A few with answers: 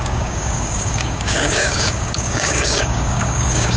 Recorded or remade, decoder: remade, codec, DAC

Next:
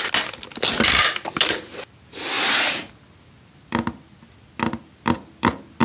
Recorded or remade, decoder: recorded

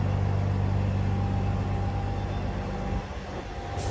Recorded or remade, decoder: recorded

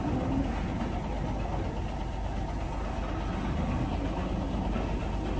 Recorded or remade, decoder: recorded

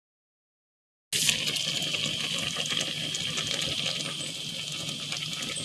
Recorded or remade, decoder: recorded